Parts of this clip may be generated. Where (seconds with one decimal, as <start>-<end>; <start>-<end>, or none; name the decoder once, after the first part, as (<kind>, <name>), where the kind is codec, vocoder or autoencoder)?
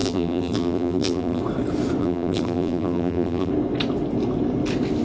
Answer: 0.0-1.4 (vocoder, BigVGAN v2); 2.0-3.5